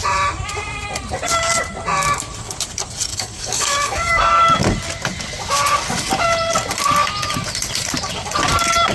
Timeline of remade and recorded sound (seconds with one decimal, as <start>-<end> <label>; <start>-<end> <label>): 0.0-3.1 recorded; 3.1-4.3 remade; 4.3-8.9 recorded